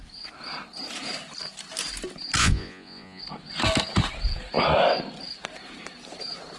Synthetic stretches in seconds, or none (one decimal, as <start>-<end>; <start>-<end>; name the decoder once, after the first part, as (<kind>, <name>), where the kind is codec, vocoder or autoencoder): 2.4-3.2 (vocoder, Vocos)